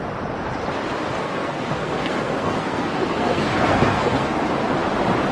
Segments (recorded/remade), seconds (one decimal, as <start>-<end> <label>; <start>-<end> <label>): 0.0-1.2 recorded; 1.2-4.4 remade; 4.4-5.3 recorded